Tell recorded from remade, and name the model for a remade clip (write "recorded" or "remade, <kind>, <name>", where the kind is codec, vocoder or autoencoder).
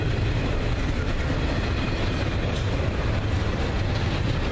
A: recorded